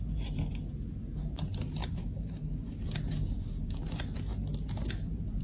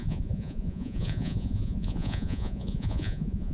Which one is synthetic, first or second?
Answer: second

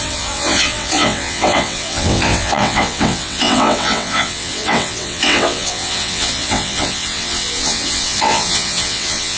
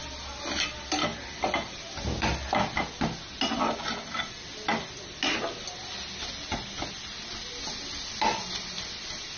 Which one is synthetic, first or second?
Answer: first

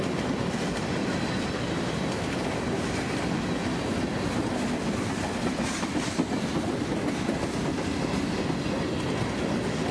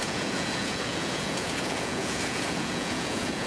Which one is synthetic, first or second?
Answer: second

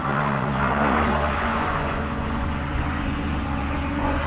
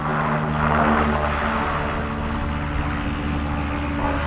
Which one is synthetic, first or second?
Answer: first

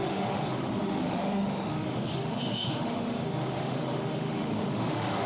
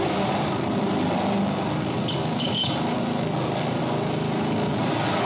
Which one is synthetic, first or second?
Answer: first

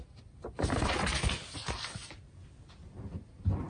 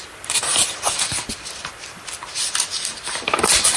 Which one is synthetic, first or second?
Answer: second